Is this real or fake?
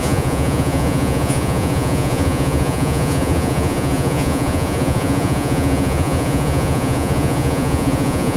fake